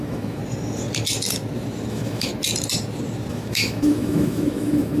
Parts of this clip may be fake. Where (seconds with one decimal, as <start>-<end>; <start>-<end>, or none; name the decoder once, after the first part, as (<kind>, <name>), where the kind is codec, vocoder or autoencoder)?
0.0-0.4 (autoencoder, DAC-VAE); 1.9-2.3; 3.3-5.0